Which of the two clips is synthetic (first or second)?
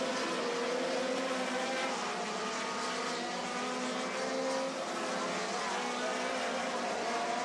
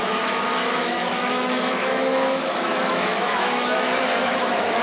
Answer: second